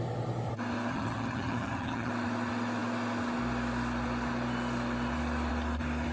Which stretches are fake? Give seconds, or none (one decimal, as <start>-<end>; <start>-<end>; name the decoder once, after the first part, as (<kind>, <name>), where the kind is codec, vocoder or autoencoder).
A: 0.9-2.1 (vocoder, HiFi-GAN)